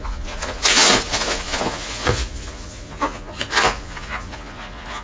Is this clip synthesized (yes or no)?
yes